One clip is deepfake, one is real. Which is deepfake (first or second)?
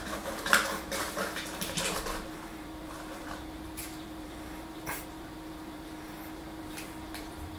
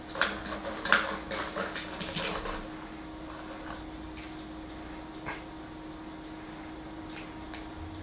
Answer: first